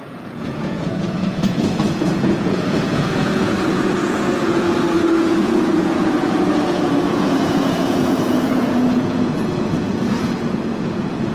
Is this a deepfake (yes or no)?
yes